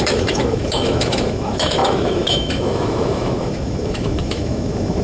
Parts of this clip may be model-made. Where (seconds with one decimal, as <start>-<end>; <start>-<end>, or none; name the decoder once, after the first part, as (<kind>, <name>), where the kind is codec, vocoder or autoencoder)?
0.0-5.0 (autoencoder, DAC-VAE)